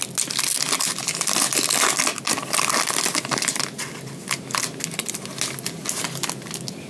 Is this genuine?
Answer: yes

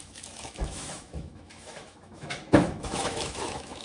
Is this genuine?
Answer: no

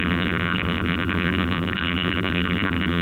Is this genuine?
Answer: no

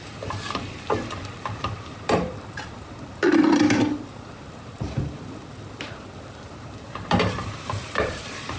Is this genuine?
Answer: no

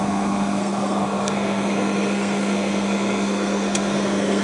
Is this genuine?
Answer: no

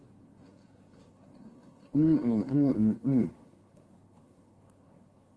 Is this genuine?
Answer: no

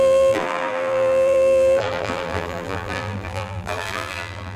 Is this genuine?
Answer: no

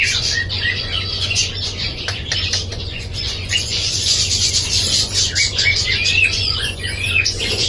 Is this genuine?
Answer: no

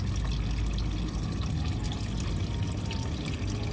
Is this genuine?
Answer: yes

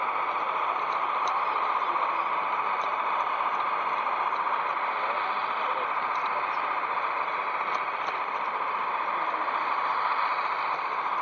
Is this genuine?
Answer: yes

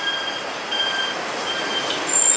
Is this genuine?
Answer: yes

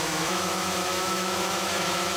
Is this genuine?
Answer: no